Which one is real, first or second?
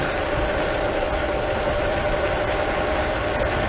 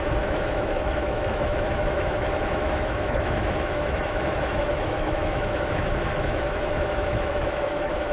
first